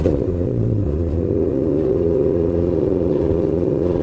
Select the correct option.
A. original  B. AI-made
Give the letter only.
B